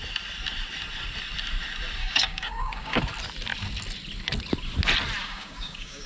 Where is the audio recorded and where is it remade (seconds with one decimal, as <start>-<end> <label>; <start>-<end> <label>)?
0.0-2.0 recorded; 2.0-3.0 remade; 3.0-5.2 recorded; 5.2-6.1 remade